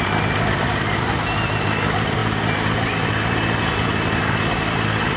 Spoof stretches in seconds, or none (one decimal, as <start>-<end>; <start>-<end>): none